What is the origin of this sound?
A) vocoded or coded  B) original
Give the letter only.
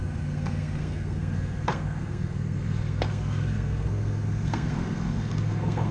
A